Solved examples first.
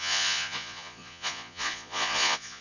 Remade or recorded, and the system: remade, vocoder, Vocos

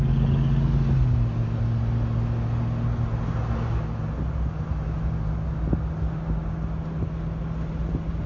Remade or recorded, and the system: recorded